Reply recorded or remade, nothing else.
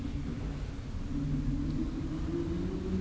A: recorded